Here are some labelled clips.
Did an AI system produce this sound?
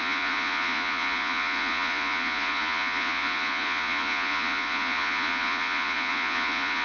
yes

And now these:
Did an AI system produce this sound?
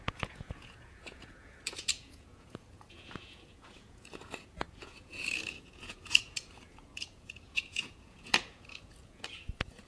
yes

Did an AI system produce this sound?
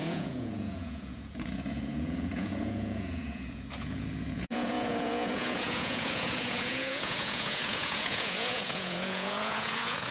yes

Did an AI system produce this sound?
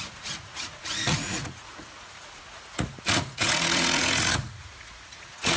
yes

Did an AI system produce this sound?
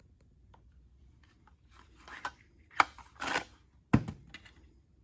no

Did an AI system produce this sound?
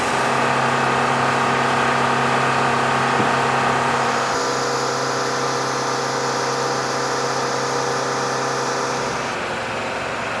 no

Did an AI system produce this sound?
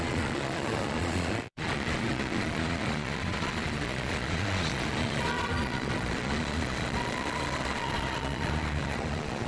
yes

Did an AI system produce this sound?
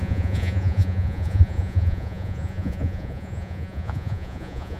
yes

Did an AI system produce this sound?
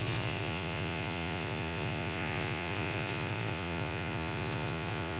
yes